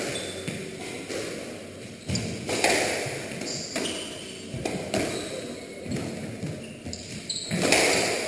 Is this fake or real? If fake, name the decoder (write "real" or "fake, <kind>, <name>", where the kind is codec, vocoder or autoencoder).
real